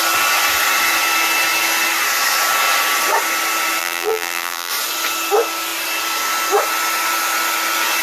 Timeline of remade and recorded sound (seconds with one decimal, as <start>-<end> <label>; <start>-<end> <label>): 0.0-3.8 recorded; 3.8-4.7 remade; 4.7-8.0 recorded